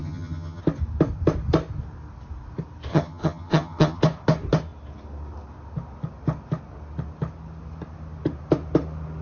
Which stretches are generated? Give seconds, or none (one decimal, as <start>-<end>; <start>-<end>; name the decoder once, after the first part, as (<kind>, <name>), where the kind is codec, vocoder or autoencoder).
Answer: 0.0-0.6 (vocoder, HiFi-GAN); 2.9-4.0